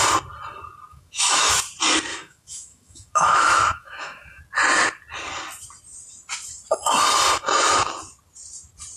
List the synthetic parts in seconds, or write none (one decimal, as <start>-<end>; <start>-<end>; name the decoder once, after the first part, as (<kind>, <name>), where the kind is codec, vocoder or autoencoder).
0.9-1.5 (autoencoder, DAC-VAE); 2.1-4.4